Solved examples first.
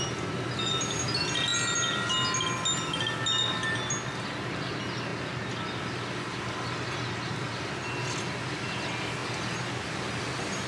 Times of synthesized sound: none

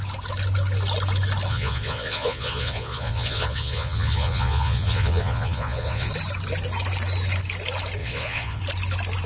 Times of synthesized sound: 1.5-6.1; 8.0-8.6

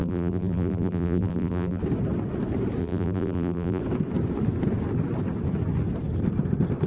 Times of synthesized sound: 0.0-1.8; 2.8-3.8

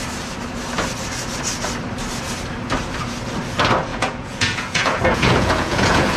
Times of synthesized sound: 3.9-6.2

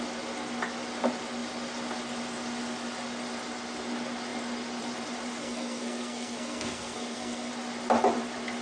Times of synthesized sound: 5.4-7.5

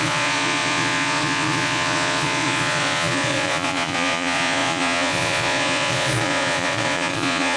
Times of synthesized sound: 0.0-7.6